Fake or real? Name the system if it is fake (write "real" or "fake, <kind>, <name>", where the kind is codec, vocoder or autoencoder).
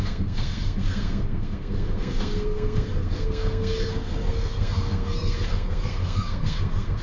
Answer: fake, codec, SNAC